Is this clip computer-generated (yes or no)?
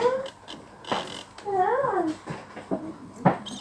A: no